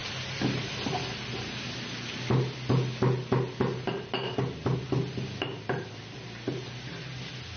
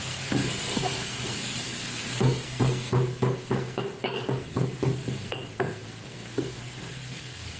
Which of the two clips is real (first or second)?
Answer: first